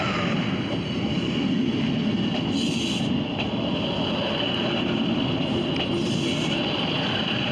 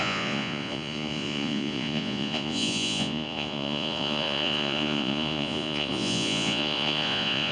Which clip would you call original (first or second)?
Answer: first